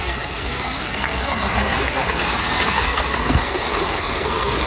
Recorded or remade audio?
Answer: remade